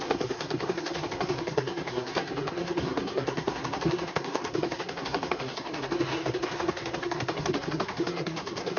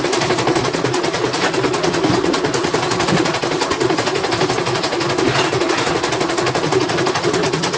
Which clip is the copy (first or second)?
first